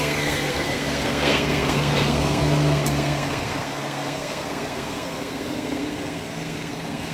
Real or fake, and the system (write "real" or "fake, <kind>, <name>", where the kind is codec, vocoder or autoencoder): fake, codec, SNAC